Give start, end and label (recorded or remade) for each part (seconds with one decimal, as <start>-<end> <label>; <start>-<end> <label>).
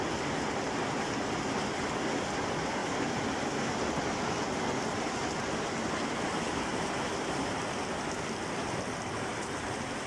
0.0-6.7 recorded; 6.7-7.6 remade; 7.6-10.1 recorded